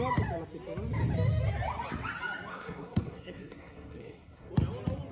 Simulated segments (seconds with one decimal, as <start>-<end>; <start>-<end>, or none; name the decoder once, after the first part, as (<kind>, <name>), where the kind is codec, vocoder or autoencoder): 2.5-4.5 (codec, SNAC)